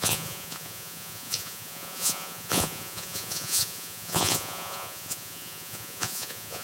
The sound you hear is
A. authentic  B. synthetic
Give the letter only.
B